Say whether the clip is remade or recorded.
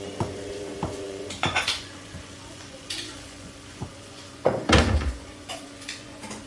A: remade